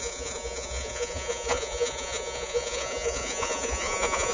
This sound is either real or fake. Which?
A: fake